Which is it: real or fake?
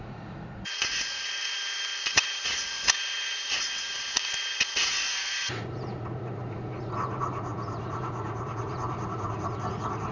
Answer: fake